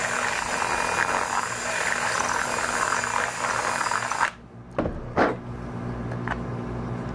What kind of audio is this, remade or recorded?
recorded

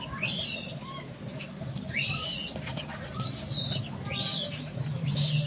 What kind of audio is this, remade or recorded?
recorded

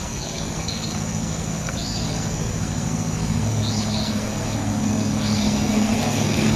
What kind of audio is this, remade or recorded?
remade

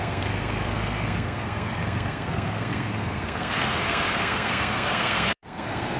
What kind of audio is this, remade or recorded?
remade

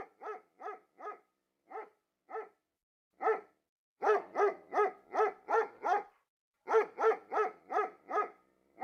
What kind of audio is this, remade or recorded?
recorded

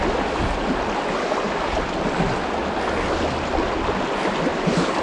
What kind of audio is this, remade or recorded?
recorded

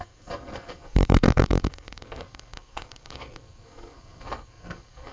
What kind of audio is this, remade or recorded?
remade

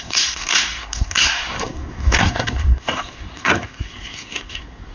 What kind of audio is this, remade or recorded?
remade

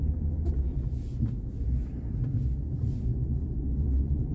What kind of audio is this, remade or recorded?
recorded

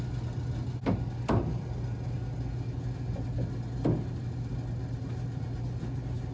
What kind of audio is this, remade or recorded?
recorded